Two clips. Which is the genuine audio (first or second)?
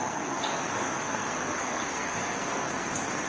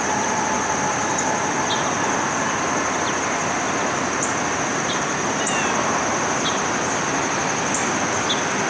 second